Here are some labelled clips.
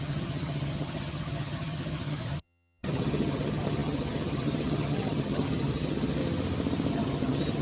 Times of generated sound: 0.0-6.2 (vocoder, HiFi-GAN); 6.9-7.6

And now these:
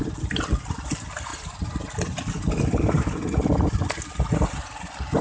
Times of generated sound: none

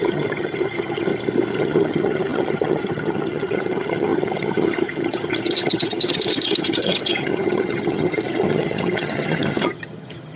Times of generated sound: 0.0-1.1 (vocoder, HiFi-GAN); 1.6-10.4

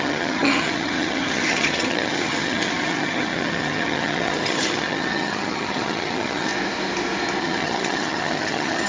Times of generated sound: 0.0-6.5 (vocoder, HiFi-GAN); 7.4-8.9

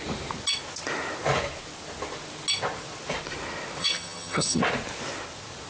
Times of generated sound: 3.8-4.6 (vocoder, HiFi-GAN)

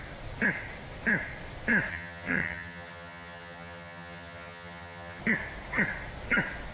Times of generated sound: 1.9-5.2 (vocoder, HiFi-GAN)